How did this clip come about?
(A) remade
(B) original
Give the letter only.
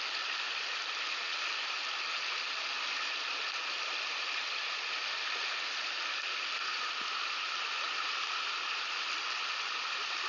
B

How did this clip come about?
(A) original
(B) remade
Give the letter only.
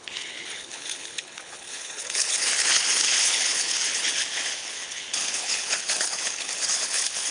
B